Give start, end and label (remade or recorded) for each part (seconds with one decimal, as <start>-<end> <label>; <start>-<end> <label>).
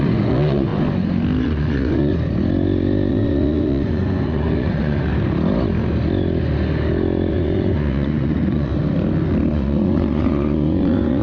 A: 0.0-0.7 remade; 0.7-1.4 recorded; 1.4-2.1 remade; 2.1-3.1 recorded; 3.1-5.1 remade; 5.1-7.3 recorded; 7.3-8.7 remade; 8.7-9.5 recorded; 9.5-11.2 remade